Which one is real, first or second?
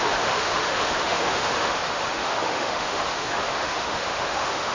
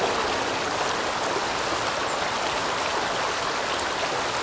second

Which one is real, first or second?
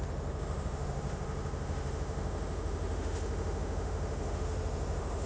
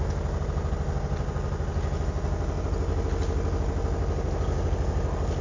second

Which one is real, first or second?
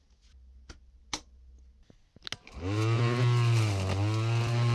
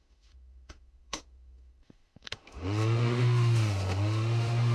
first